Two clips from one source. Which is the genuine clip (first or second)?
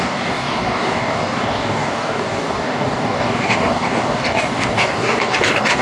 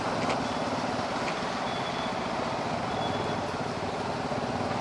second